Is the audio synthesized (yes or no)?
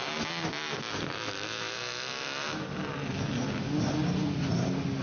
no